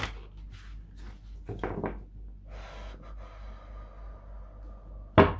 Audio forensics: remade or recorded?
recorded